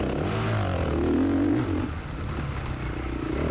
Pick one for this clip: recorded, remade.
recorded